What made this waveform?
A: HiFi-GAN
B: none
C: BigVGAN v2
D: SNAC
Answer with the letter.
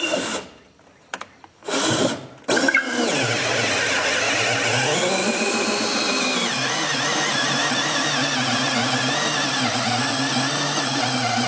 B